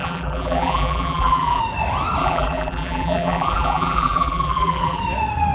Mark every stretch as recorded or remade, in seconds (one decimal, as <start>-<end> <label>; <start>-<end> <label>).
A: 0.0-1.6 remade; 1.6-2.2 recorded; 2.2-5.0 remade; 5.0-5.5 recorded